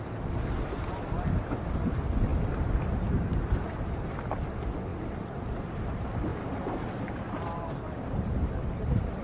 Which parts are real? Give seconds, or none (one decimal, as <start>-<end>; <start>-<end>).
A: 0.0-2.3; 4.1-6.3

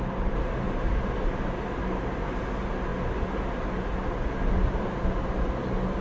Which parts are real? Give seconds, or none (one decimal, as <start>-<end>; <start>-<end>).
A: 0.0-6.0